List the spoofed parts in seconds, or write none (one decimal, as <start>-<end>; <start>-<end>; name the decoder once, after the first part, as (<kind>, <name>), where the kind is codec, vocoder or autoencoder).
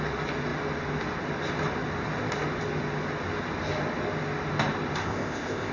5.0-5.7 (codec, ZipCodec)